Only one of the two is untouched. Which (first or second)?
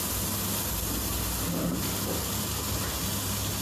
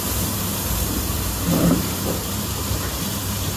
first